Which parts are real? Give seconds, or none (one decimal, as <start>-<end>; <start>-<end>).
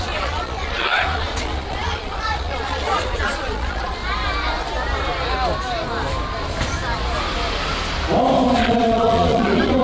4.0-8.6